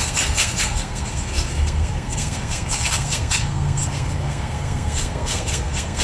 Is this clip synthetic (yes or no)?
yes